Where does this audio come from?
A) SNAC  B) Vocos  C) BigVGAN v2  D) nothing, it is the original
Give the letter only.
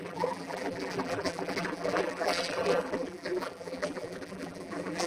C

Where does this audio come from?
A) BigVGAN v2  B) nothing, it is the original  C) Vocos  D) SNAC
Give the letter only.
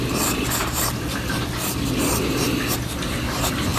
B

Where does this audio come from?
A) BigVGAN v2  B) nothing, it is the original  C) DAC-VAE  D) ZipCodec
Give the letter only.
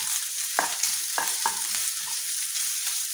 A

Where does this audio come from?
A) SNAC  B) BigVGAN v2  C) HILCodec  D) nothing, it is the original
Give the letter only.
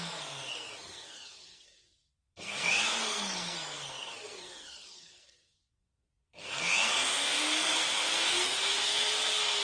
A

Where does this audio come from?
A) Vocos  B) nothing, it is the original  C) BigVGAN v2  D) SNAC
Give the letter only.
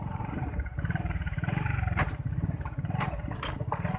C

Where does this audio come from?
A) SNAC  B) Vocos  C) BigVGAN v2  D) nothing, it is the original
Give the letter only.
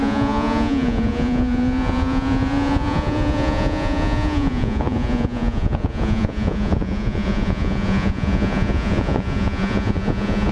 B